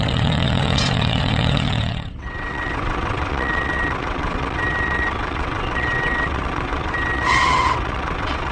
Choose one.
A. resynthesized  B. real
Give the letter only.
A